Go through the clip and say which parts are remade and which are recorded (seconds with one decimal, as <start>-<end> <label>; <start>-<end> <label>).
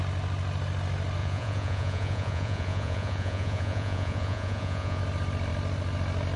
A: 0.0-1.2 recorded; 1.2-5.0 remade; 5.0-6.4 recorded